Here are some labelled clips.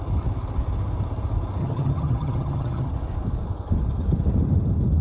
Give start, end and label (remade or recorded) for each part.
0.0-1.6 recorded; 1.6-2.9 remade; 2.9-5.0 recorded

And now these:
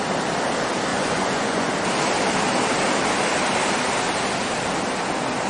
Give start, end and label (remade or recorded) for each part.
0.0-0.9 recorded; 0.9-1.7 remade; 1.7-5.5 recorded

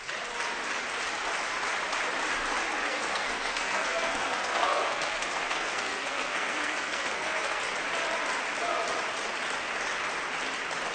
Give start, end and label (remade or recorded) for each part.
0.0-2.8 recorded; 2.8-7.6 remade; 7.6-10.9 recorded

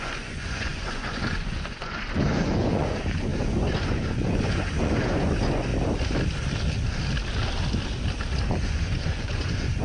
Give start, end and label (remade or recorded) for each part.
0.0-5.7 remade; 5.7-8.5 recorded; 8.5-9.8 remade

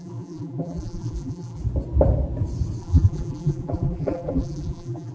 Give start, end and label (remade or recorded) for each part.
0.0-1.6 remade; 1.6-2.8 recorded; 2.8-5.1 remade

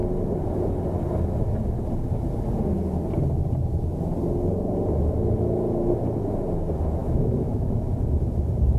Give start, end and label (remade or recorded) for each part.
0.0-7.0 recorded; 7.0-7.9 remade; 7.9-8.8 recorded

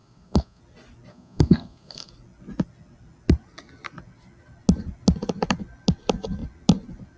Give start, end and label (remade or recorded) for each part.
0.0-0.6 remade; 0.6-1.1 recorded; 1.1-2.1 remade; 2.1-7.2 recorded